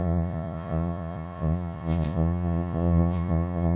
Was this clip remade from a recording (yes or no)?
yes